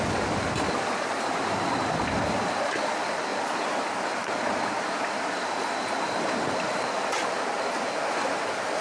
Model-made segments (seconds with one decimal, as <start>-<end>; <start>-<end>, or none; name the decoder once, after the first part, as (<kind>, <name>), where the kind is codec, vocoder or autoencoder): none